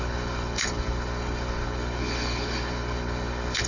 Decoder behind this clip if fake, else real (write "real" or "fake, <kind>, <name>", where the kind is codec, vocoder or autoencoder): fake, codec, HILCodec